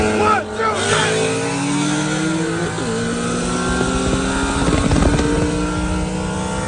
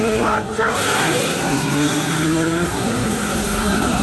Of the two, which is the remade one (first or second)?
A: second